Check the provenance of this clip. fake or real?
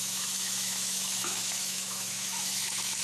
fake